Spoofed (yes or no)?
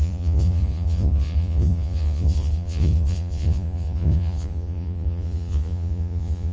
yes